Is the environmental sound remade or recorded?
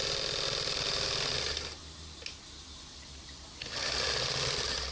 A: recorded